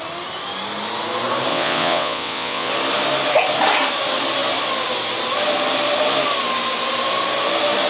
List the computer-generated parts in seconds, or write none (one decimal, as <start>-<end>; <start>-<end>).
1.5-2.7